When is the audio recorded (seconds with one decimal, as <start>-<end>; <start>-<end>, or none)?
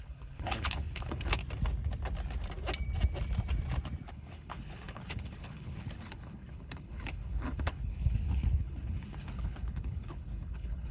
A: 1.4-4.1